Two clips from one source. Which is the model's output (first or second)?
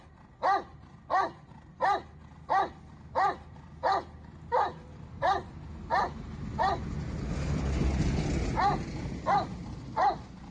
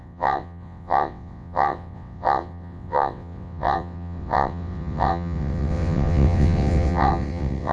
second